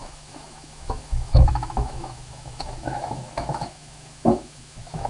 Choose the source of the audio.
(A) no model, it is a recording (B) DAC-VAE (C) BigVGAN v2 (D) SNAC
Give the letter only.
B